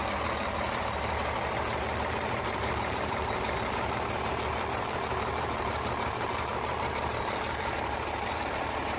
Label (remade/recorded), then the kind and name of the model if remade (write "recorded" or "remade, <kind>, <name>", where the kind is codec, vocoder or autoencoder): remade, vocoder, BigVGAN v2